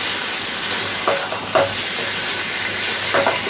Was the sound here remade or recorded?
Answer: recorded